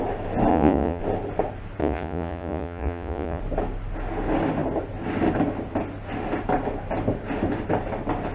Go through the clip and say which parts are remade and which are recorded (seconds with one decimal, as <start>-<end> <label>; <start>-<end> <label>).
0.0-0.5 recorded; 0.5-1.0 remade; 1.0-1.8 recorded; 1.8-3.4 remade; 3.4-8.3 recorded